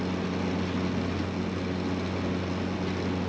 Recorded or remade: recorded